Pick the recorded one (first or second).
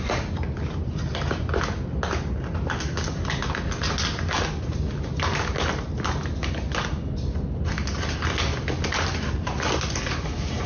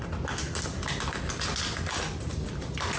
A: first